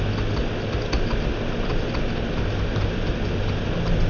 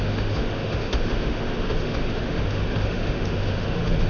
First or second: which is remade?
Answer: second